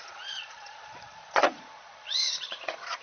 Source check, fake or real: fake